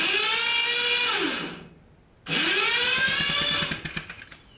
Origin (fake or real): real